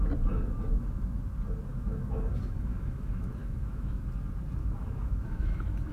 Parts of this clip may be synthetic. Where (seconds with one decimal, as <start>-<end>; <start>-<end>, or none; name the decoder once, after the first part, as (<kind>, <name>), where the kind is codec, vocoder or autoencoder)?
1.7-4.0 (autoencoder, DAC-VAE); 4.6-5.9